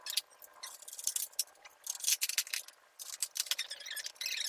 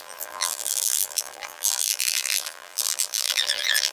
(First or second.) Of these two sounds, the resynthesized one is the second